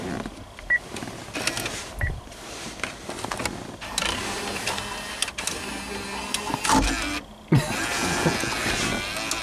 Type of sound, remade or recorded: recorded